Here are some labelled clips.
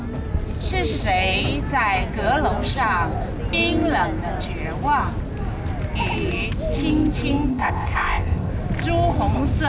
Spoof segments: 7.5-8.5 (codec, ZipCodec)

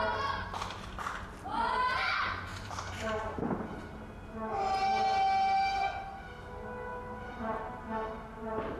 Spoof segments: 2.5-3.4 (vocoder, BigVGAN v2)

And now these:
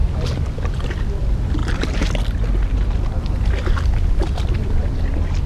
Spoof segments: none